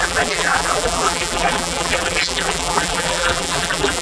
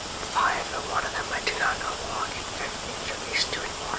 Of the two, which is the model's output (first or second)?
first